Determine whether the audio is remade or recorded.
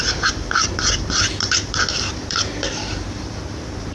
remade